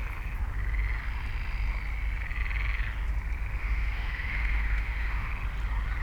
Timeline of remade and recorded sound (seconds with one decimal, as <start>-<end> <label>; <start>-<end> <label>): 0.0-3.6 recorded; 3.6-5.3 remade; 5.3-6.0 recorded

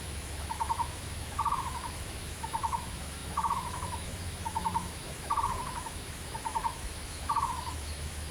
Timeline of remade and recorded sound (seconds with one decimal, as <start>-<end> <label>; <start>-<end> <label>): 0.0-8.3 remade

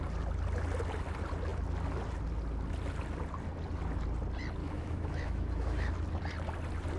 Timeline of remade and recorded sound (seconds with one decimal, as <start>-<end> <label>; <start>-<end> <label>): 0.0-4.6 recorded; 4.6-5.9 remade; 5.9-7.0 recorded

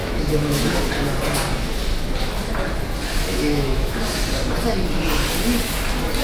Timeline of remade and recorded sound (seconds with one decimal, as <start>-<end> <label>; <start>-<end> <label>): 0.0-0.8 remade; 0.8-3.3 recorded; 3.3-3.9 remade; 3.9-6.2 recorded

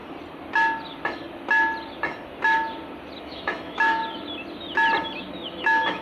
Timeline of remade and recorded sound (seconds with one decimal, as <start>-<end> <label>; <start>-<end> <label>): 0.0-3.2 recorded; 3.2-4.0 remade; 4.0-5.3 recorded; 5.3-6.0 remade

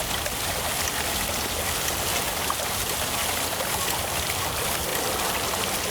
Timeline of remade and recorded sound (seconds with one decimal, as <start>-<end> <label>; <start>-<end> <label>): 0.0-5.9 recorded

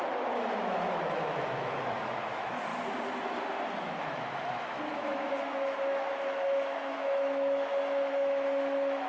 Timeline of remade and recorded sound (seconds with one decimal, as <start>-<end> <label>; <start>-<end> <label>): 0.0-2.7 remade; 2.7-3.8 recorded; 3.8-9.1 remade

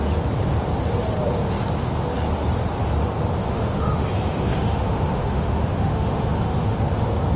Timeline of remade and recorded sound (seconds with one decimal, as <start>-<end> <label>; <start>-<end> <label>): 0.0-3.4 recorded; 3.4-6.9 remade; 6.9-7.4 recorded